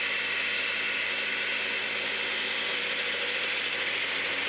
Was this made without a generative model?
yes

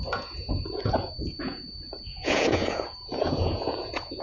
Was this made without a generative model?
no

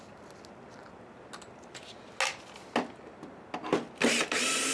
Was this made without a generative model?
yes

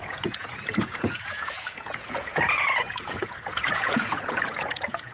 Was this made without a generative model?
no